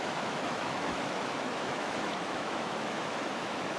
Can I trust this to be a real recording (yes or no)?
no